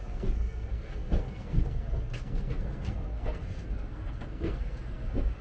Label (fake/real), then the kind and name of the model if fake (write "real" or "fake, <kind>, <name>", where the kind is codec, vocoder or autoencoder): fake, codec, SNAC